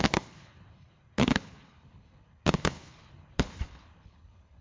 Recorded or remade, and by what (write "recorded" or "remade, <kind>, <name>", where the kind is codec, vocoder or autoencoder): remade, codec, HILCodec